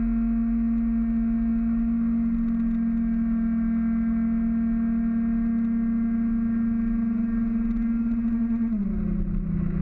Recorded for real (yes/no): yes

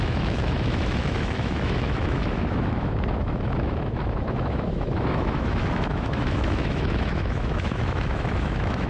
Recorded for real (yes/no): no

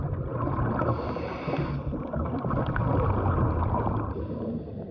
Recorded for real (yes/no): yes